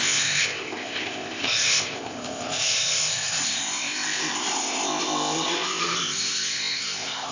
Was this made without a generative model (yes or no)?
no